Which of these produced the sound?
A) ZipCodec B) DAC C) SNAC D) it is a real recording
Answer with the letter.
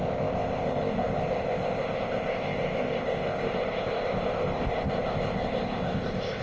A